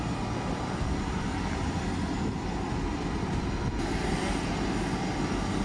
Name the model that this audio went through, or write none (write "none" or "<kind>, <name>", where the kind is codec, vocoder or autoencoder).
none